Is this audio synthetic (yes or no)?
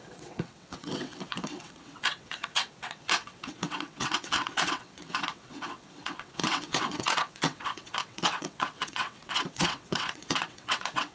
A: yes